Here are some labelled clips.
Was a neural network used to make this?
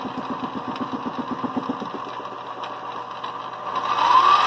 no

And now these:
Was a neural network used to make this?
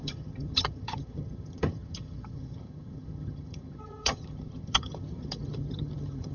yes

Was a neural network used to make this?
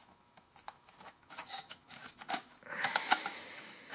yes